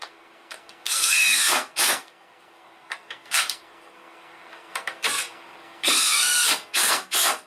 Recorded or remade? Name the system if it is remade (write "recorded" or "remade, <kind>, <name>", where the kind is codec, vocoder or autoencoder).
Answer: remade, codec, SNAC